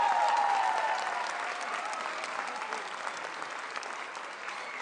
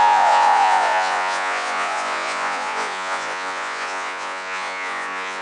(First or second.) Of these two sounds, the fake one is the second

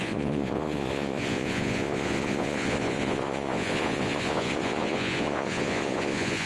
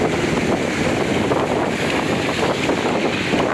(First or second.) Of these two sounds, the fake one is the first